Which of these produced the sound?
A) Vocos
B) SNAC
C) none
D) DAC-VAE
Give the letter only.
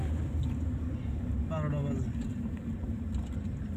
C